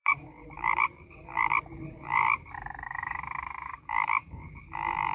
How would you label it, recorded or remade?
remade